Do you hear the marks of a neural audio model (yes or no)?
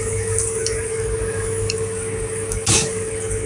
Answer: yes